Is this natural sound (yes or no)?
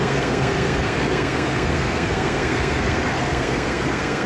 no